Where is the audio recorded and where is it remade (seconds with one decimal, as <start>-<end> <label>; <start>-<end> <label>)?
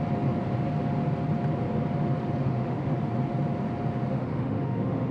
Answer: 0.0-2.4 recorded; 2.4-3.1 remade; 3.1-4.1 recorded; 4.1-5.1 remade